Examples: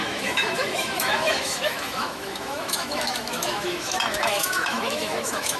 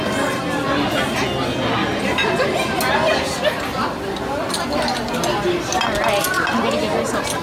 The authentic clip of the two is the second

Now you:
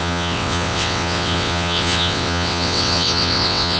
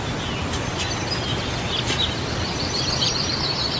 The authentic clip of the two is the second